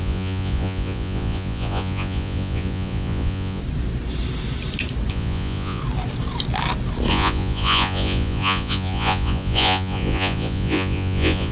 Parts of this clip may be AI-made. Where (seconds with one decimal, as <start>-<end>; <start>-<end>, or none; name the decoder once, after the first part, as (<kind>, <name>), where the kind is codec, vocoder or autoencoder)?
0.0-3.6 (vocoder, Vocos); 5.1-5.8; 7.1-11.5